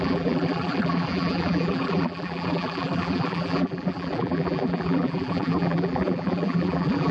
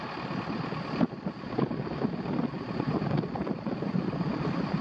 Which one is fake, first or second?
first